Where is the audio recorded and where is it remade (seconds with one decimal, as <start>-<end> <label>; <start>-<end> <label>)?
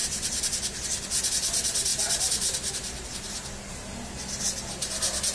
0.0-5.3 recorded